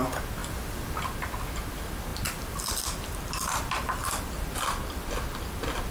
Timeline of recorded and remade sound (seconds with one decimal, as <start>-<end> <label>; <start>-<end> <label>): 0.0-0.4 recorded; 0.4-1.1 remade; 1.1-2.1 recorded; 2.1-5.1 remade; 5.1-5.9 recorded

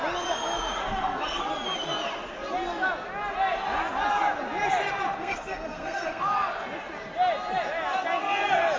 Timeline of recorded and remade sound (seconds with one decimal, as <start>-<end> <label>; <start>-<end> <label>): 0.0-0.8 recorded; 0.8-1.4 remade; 1.4-5.2 recorded; 5.2-6.2 remade; 6.2-8.8 recorded

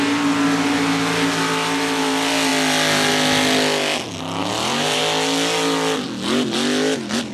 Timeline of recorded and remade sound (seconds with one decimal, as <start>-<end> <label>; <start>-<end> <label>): 0.0-4.4 recorded; 4.4-5.0 remade; 5.0-7.3 recorded